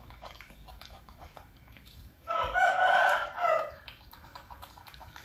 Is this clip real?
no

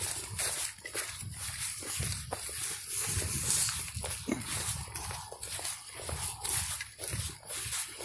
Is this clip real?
yes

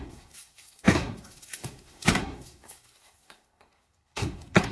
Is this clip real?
no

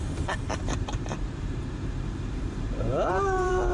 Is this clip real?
no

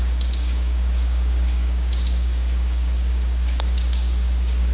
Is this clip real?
no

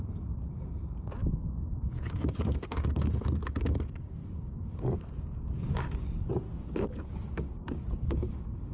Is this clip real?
no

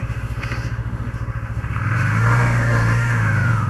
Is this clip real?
no